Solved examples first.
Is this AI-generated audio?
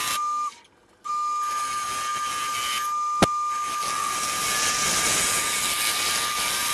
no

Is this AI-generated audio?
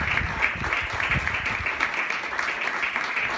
no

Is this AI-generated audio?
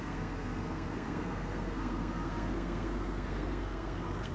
yes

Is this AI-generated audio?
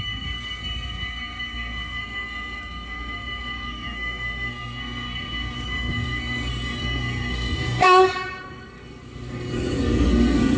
yes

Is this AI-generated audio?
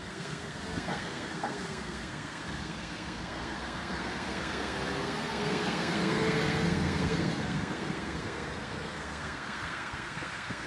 yes